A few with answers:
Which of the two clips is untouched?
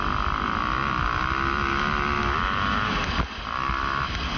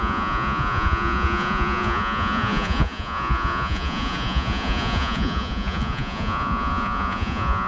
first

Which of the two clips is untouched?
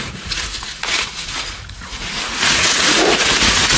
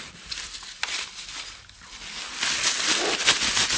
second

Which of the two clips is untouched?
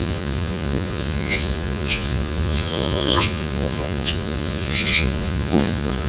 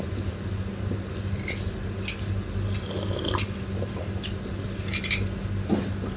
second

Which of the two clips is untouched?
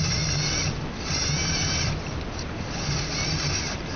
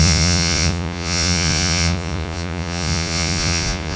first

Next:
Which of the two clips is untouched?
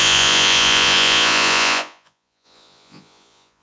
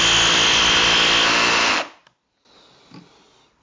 second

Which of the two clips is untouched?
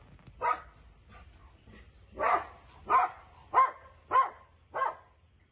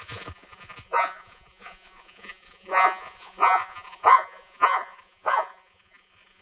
first